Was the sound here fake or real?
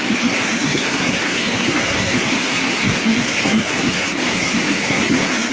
fake